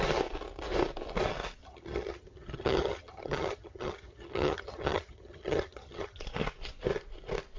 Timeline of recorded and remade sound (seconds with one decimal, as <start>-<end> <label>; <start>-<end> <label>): 0.0-1.6 recorded; 1.6-6.2 remade; 6.2-7.6 recorded